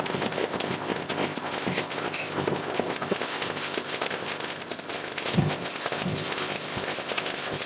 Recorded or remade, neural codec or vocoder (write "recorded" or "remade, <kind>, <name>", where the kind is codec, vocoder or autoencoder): remade, codec, ZipCodec